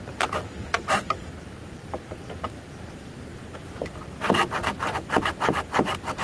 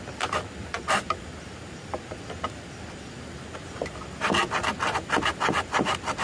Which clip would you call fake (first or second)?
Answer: first